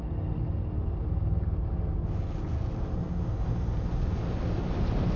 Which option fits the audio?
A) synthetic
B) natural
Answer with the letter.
B